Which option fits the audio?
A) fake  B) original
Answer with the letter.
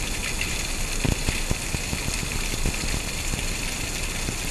B